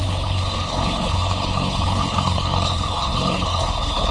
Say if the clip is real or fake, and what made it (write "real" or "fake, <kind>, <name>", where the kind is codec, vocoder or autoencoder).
fake, codec, HILCodec